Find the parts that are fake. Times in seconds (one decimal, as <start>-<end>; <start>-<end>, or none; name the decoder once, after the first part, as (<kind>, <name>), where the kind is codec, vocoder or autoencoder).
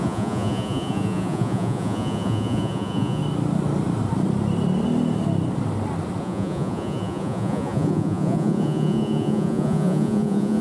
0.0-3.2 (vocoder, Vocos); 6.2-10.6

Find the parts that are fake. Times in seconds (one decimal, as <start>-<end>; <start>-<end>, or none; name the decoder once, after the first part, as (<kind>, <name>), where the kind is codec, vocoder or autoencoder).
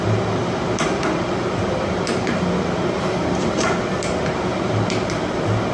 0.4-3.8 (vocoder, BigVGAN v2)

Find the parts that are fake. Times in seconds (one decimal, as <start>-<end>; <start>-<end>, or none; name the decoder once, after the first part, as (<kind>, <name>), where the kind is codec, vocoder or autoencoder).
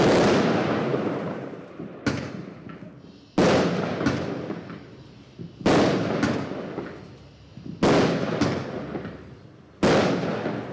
0.9-2.3 (vocoder, BigVGAN v2)